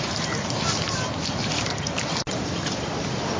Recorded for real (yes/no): yes